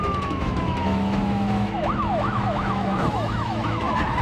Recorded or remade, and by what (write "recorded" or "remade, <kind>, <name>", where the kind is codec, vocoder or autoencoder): remade, autoencoder, DAC-VAE